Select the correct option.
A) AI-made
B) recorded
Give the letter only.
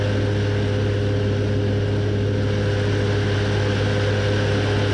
B